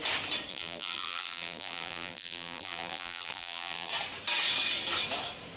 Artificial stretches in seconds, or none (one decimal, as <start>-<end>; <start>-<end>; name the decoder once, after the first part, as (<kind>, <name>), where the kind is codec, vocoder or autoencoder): 0.5-3.9 (vocoder, BigVGAN v2)

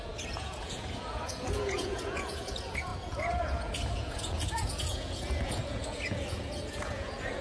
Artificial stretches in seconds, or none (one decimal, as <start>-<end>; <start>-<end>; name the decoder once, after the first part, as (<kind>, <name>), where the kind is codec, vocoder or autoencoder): 0.0-7.4 (vocoder, Vocos)